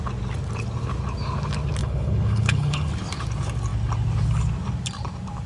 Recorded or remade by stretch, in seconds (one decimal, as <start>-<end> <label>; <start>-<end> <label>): 0.0-1.8 recorded; 1.8-2.9 remade; 2.9-5.5 recorded